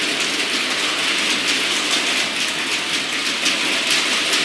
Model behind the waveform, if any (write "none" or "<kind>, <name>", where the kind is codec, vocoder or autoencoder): none